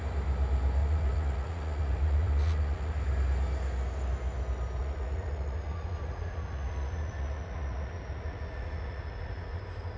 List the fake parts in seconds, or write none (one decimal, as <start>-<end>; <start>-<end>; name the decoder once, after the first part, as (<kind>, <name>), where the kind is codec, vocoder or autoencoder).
0.8-2.9 (vocoder, Vocos); 4.8-9.6